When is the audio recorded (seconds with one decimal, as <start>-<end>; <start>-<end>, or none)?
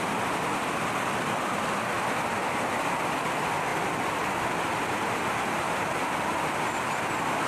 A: 0.0-7.5